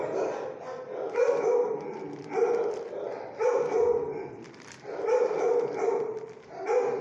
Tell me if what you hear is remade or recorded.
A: recorded